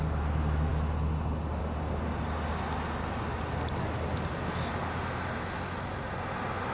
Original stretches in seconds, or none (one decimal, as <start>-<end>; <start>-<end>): 0.0-6.7